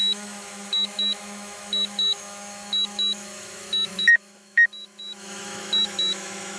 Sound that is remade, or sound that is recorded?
remade